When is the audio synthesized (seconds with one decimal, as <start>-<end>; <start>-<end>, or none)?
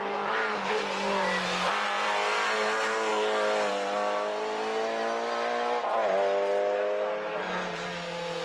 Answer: none